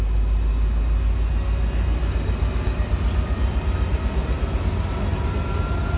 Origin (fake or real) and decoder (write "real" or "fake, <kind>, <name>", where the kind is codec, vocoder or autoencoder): real